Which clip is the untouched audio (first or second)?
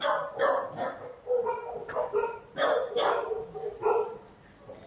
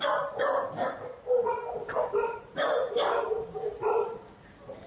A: first